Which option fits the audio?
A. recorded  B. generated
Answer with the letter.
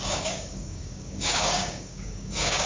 B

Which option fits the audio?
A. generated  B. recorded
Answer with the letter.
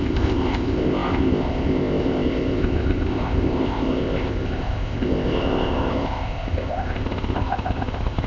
A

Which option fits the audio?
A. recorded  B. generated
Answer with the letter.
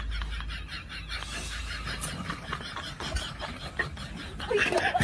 A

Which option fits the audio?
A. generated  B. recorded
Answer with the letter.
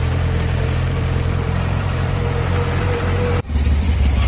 A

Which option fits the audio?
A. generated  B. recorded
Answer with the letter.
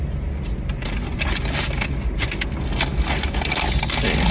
B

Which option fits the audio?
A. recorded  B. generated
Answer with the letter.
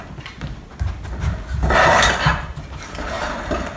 A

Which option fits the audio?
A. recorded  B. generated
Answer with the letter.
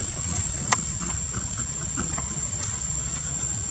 B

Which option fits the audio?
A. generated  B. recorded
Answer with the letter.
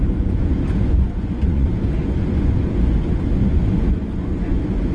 A